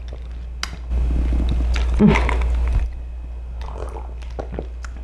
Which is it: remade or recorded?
recorded